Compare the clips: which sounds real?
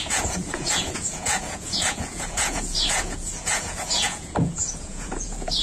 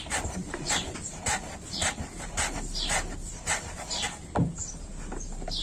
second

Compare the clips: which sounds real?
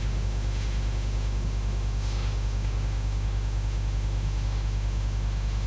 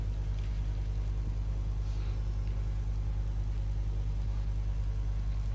second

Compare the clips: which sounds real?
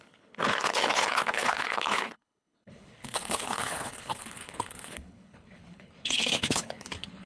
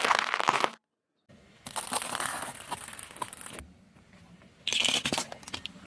second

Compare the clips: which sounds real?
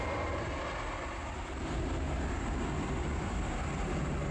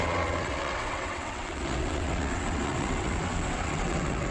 first